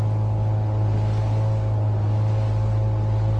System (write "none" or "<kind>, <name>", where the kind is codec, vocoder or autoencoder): none